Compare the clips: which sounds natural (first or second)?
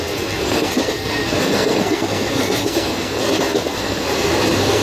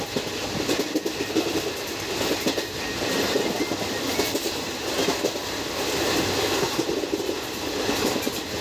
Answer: second